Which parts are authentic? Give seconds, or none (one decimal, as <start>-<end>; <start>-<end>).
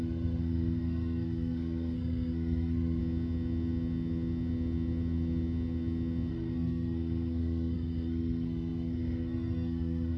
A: 3.0-6.3